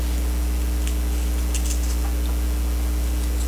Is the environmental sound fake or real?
real